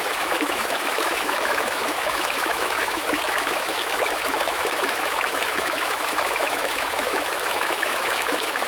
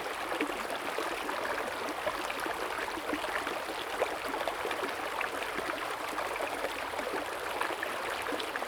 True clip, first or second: second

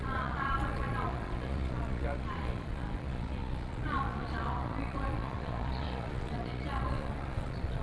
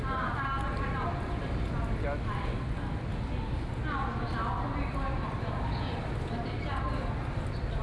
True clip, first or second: second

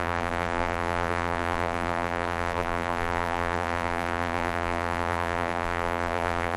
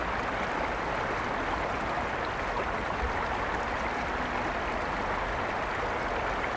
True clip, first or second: second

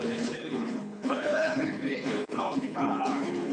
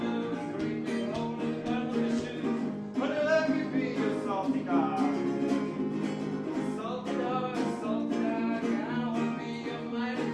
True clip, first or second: second